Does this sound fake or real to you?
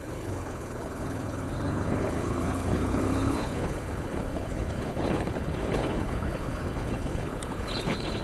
fake